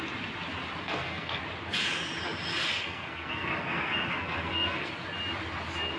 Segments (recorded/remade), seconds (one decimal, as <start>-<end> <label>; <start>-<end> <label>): 0.0-0.8 recorded; 0.8-1.4 remade; 1.4-2.7 recorded; 2.7-4.9 remade; 4.9-6.0 recorded